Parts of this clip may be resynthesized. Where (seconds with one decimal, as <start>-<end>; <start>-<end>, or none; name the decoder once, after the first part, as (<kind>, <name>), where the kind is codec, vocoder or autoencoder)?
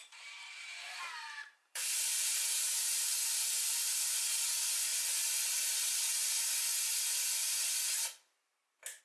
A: 0.0-4.2 (vocoder, BigVGAN v2)